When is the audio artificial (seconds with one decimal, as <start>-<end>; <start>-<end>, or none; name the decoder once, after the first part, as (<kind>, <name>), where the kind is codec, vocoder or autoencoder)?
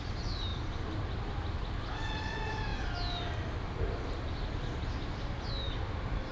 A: none